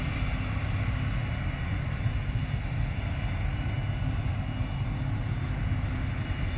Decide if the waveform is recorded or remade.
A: recorded